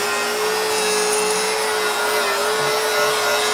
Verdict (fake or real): real